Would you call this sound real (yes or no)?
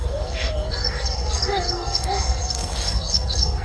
no